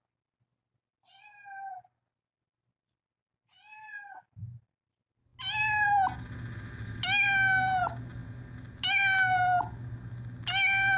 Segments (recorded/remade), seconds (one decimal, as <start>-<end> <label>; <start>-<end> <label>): 0.0-11.0 recorded